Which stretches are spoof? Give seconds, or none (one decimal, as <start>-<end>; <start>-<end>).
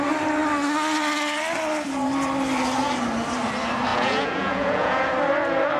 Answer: 3.9-5.1